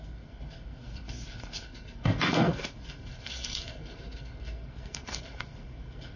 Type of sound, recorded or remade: remade